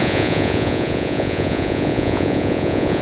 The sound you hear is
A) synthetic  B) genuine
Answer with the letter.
A